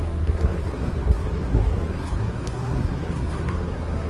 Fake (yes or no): yes